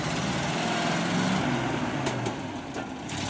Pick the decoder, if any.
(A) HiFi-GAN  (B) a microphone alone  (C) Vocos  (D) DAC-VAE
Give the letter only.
B